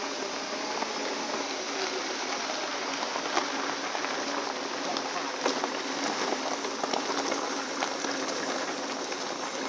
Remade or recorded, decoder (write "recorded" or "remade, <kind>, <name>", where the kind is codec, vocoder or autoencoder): recorded